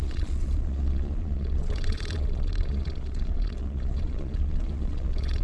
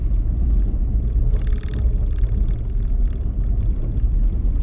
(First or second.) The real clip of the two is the second